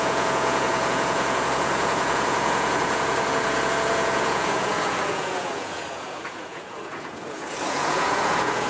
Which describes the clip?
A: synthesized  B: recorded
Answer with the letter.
A